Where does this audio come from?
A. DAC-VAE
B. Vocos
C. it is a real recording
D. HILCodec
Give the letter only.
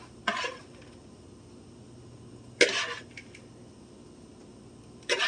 C